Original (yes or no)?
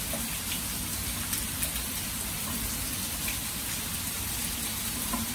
no